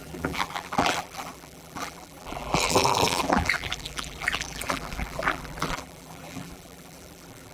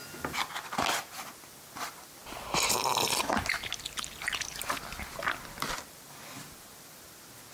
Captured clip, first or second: second